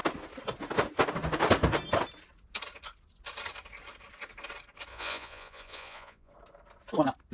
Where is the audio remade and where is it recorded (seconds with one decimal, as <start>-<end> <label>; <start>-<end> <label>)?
0.0-4.9 recorded; 4.9-6.3 remade; 6.3-7.3 recorded